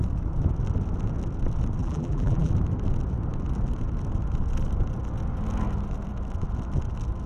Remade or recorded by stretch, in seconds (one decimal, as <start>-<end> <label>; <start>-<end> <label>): 0.0-1.8 recorded; 1.8-2.5 remade; 2.5-7.3 recorded